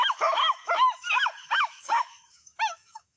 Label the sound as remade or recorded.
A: remade